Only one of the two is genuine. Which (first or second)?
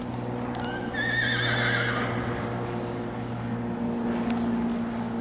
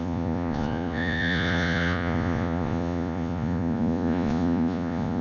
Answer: first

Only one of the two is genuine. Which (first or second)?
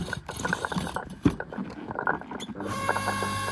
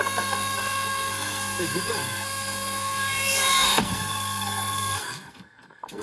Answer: first